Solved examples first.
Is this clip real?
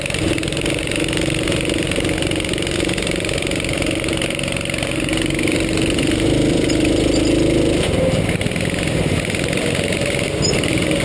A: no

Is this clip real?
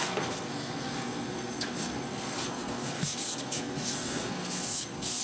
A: no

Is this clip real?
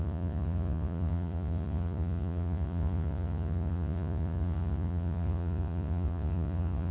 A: no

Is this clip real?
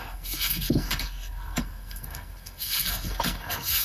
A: no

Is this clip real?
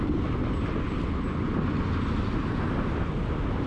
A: yes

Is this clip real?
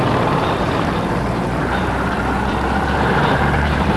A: no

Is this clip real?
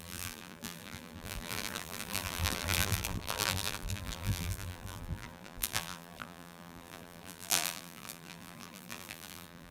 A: no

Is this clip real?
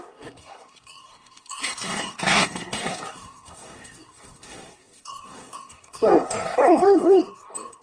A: no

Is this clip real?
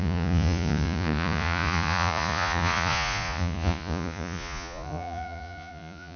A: no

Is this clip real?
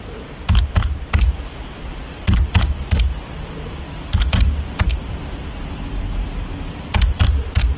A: yes